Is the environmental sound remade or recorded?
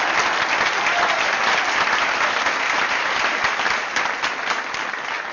recorded